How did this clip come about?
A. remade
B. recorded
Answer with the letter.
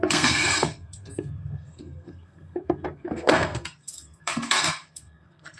A